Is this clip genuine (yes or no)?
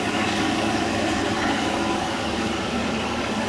no